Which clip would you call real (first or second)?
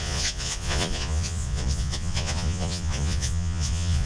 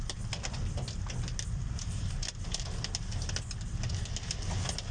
second